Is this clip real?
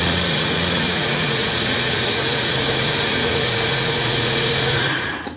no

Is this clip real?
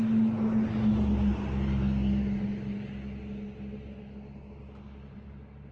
yes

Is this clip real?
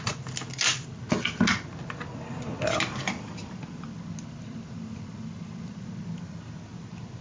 yes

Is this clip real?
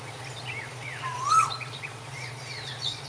no